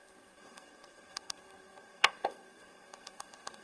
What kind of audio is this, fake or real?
fake